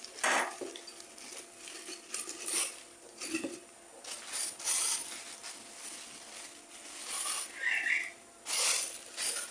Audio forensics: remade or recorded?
recorded